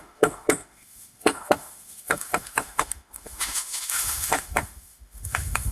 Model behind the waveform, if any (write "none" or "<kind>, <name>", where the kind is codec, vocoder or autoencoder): autoencoder, DAC-VAE